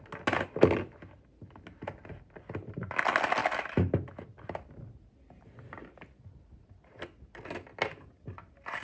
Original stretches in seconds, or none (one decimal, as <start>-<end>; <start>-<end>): 0.0-8.8